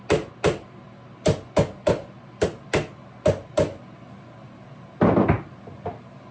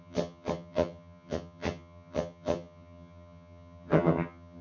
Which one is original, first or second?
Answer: first